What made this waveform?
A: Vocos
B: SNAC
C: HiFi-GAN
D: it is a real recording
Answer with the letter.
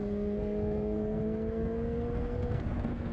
B